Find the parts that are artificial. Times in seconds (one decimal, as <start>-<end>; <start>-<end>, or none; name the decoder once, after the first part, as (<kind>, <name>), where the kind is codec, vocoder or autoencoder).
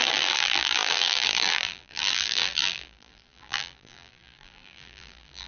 0.0-5.5 (vocoder, BigVGAN v2)